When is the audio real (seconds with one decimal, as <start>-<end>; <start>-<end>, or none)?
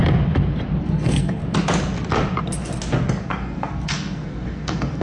0.0-0.8; 1.4-3.2